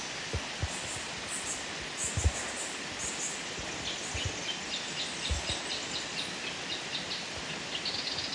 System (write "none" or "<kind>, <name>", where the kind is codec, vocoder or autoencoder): none